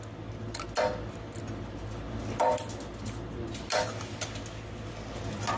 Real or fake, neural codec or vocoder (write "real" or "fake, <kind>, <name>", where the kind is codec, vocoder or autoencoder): real